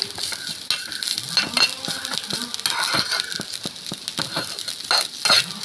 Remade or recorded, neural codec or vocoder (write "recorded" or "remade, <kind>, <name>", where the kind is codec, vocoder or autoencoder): recorded